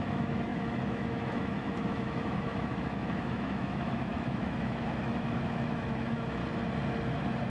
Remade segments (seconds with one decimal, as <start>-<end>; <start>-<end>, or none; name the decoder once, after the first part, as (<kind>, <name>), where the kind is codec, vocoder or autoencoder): 0.0-6.4 (autoencoder, DAC-VAE)